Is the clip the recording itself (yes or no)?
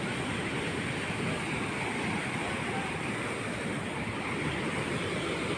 yes